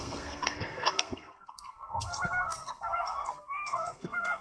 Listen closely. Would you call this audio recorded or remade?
remade